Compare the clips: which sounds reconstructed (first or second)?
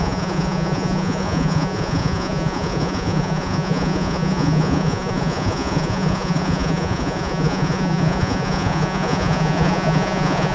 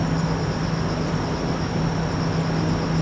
first